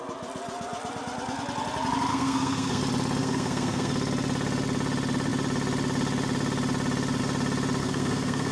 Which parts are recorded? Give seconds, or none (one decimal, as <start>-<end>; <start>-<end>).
0.0-2.1; 2.8-3.2; 3.9-7.8